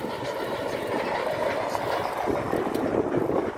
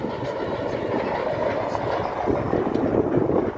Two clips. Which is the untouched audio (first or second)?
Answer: second